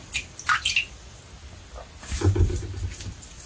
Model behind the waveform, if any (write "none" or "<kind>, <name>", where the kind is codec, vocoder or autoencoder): none